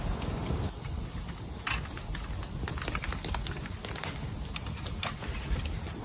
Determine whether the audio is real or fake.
real